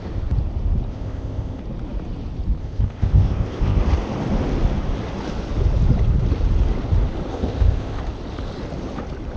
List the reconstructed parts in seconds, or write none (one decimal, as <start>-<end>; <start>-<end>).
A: 0.9-1.6; 2.6-3.8; 7.3-8.0